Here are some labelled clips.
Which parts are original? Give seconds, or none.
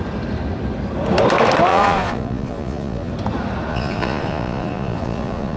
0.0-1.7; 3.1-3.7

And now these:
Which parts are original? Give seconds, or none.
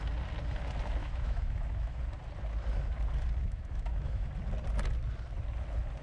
0.0-1.0; 2.0-3.4; 4.3-6.0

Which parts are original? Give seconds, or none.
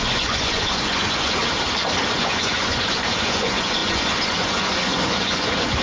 1.4-2.1